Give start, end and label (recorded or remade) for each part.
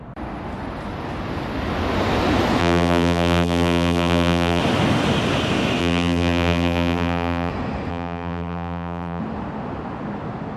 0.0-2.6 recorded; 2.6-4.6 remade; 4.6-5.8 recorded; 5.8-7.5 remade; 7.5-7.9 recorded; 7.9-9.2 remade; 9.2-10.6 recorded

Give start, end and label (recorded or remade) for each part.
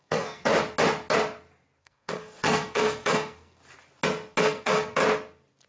0.0-0.5 remade; 0.5-1.8 recorded; 1.8-3.6 remade; 3.6-4.4 recorded; 4.4-5.0 remade; 5.0-5.7 recorded